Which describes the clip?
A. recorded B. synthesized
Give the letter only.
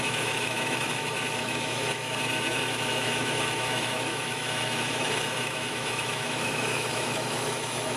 B